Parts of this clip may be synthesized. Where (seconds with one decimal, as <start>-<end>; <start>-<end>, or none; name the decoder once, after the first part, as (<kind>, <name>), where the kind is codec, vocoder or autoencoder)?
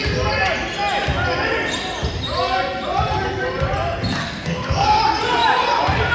4.2-5.0 (codec, SNAC)